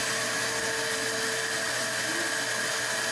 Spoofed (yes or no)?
no